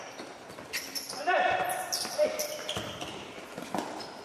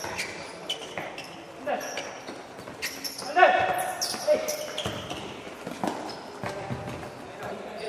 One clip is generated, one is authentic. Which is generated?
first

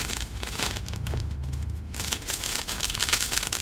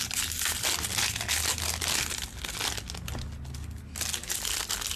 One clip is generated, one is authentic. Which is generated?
first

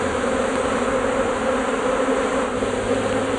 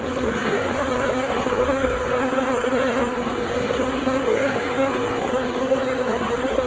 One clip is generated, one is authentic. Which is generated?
second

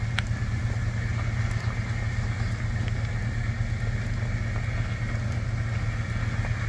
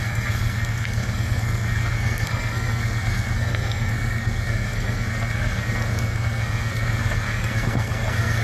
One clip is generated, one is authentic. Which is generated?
second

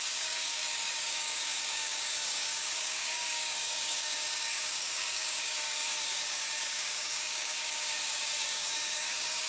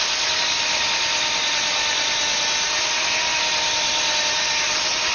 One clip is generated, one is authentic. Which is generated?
first